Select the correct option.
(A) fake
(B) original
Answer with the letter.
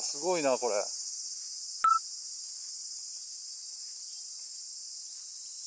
B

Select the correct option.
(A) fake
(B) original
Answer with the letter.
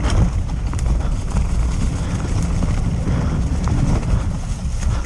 B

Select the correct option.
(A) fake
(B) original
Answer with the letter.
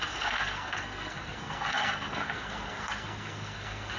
A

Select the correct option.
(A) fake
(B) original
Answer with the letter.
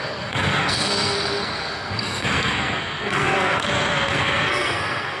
A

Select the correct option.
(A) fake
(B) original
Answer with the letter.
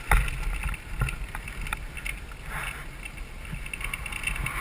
B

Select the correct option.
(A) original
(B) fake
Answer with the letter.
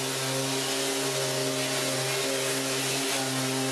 A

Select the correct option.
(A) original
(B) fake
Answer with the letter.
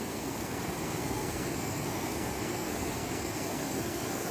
B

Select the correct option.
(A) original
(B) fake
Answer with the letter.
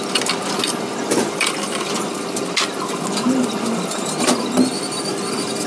A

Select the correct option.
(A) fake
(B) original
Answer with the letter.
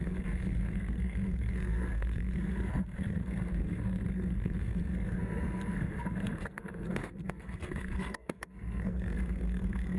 A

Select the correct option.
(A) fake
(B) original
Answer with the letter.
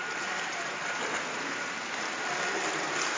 B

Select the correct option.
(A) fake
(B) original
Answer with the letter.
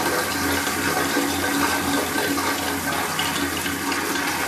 B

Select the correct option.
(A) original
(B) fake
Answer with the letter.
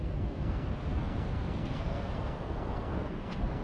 B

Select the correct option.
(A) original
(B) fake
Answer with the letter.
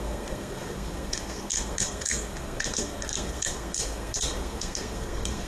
B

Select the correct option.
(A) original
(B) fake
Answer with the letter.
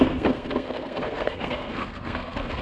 B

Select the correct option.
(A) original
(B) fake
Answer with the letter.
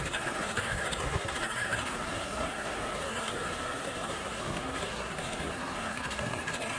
B